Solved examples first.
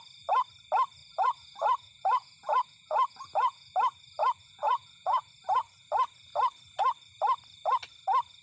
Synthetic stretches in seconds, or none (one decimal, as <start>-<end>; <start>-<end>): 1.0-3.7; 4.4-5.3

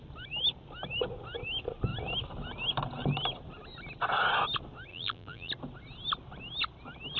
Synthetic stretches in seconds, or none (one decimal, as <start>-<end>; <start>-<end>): 4.9-5.5

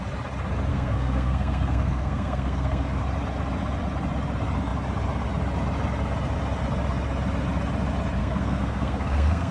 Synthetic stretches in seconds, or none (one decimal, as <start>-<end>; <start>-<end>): 0.7-3.0; 8.2-9.5

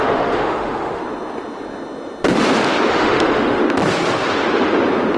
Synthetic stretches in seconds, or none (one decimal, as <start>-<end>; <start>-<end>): 0.0-1.0; 2.9-3.6